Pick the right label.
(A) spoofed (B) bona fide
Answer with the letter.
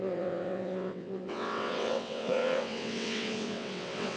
A